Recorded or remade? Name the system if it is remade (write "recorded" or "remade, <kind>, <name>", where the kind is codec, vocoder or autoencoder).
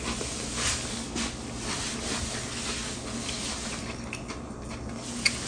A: recorded